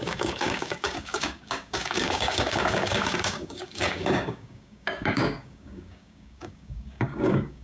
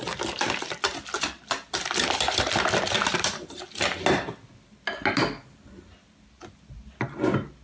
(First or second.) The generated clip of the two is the first